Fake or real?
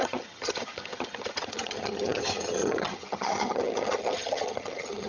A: fake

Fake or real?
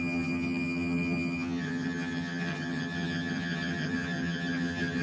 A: fake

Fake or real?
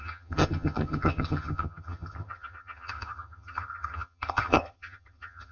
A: fake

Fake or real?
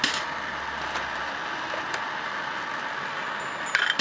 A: real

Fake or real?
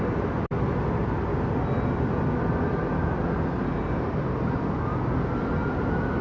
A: real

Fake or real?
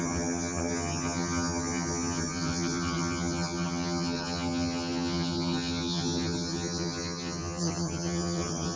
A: fake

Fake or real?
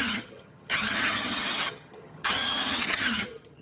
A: fake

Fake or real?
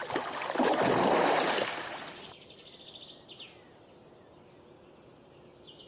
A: real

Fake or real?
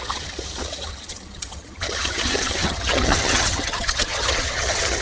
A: fake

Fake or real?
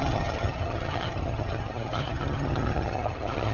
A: fake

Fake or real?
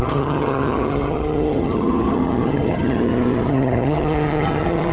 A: fake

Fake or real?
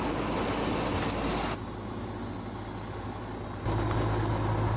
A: real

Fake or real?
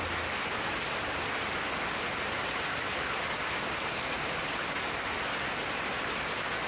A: real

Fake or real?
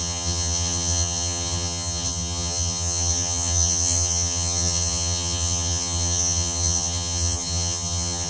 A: fake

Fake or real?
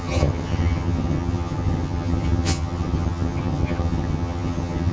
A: fake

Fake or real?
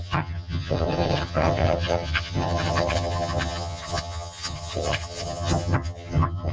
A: fake